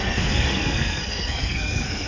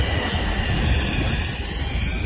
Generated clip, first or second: first